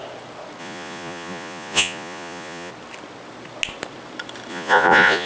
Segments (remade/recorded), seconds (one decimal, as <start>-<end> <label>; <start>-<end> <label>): 0.0-0.6 recorded; 0.6-2.7 remade; 2.7-4.5 recorded; 4.5-5.3 remade